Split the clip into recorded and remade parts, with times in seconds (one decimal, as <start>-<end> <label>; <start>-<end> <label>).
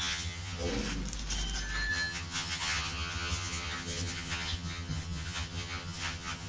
0.0-0.7 remade; 0.7-1.9 recorded; 1.9-6.5 remade